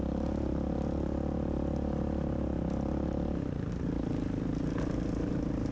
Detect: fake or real real